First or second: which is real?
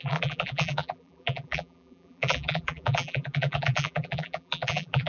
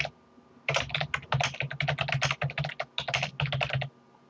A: second